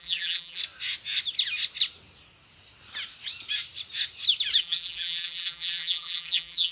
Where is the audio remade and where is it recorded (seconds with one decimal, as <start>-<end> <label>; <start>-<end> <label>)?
0.0-0.6 remade; 0.6-4.6 recorded; 4.6-6.7 remade